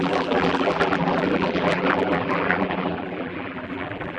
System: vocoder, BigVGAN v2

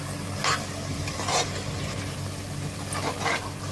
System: none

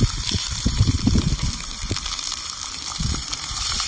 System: vocoder, BigVGAN v2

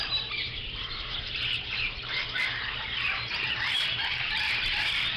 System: vocoder, BigVGAN v2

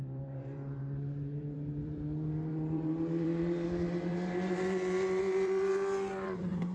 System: vocoder, BigVGAN v2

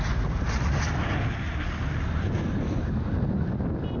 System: none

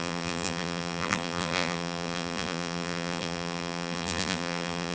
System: vocoder, BigVGAN v2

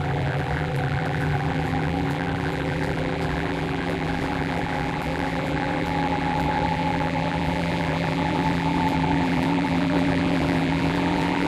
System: vocoder, BigVGAN v2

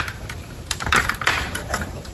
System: vocoder, BigVGAN v2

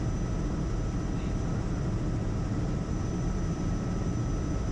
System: vocoder, BigVGAN v2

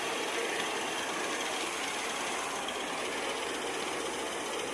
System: none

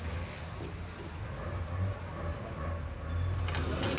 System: none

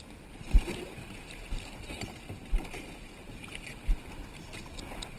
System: none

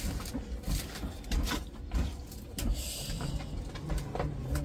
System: none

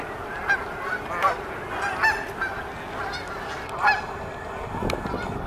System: none